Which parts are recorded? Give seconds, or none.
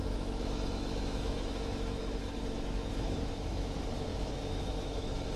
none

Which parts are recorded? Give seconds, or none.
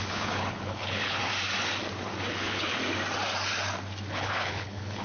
1.2-2.3; 2.8-4.1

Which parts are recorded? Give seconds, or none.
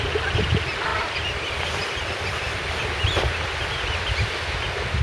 0.0-0.9; 3.3-5.0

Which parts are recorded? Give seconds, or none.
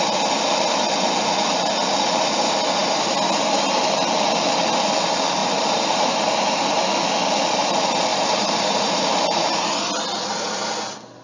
0.0-5.4; 6.6-8.1; 9.7-11.2